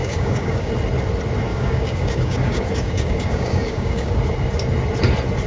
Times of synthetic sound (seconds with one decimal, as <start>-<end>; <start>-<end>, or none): 0.0-0.7; 1.5-4.1